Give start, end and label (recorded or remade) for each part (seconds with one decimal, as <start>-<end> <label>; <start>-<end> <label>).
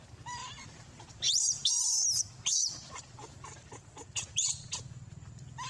0.0-0.4 recorded; 0.4-1.7 remade; 1.7-2.6 recorded; 2.6-4.7 remade; 4.7-5.7 recorded